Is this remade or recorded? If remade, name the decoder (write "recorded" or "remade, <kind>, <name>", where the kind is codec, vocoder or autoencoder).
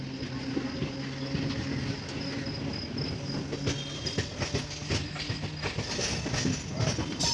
recorded